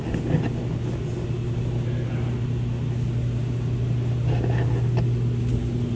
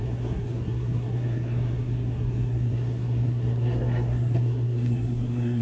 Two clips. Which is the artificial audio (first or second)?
second